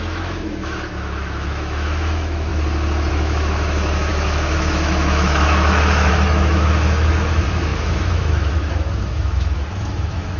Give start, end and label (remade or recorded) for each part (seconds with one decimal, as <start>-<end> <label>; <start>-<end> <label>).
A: 0.0-2.5 remade; 2.5-3.1 recorded; 3.1-10.4 remade